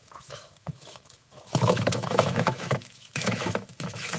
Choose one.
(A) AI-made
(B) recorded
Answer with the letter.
A